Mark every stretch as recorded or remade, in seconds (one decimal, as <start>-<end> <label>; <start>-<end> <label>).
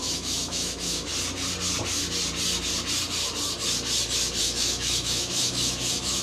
0.0-1.1 remade; 1.1-4.4 recorded; 4.4-6.2 remade